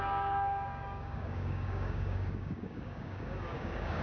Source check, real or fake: fake